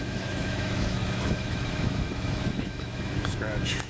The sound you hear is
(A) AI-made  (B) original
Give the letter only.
A